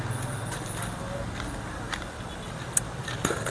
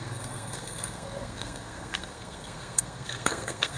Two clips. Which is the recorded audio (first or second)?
first